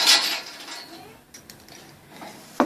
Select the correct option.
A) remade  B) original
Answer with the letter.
B